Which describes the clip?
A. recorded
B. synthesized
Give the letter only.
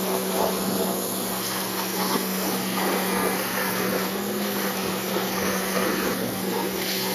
B